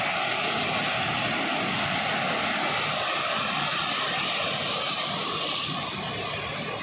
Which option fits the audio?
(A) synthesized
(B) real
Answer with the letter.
B